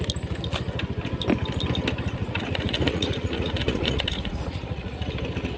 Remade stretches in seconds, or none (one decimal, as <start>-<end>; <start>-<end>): 2.2-5.1